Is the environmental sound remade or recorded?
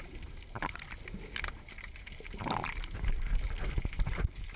recorded